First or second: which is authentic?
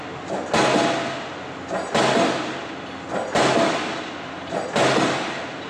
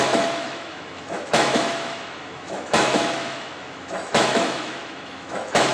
first